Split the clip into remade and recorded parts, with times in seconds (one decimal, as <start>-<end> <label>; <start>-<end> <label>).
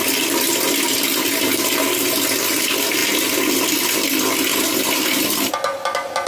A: 0.0-6.3 recorded